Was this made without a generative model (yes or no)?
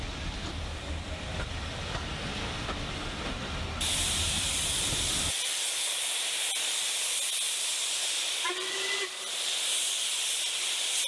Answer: yes